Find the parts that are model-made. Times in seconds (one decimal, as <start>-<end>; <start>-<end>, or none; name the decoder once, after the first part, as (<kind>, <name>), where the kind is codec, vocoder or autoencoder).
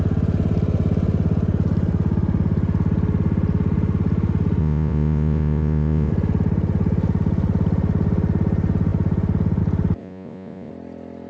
4.6-6.1 (vocoder, Vocos); 10.0-10.7